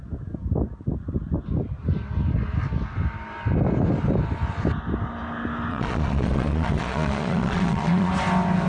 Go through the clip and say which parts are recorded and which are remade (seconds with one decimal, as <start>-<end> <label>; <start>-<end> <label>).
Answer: 0.0-5.7 recorded; 5.7-8.1 remade; 8.1-8.7 recorded